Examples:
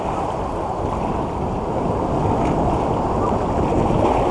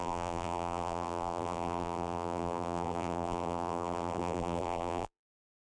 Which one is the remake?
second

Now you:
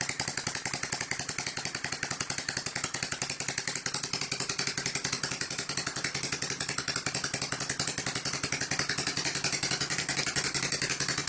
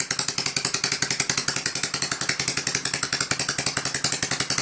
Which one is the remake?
first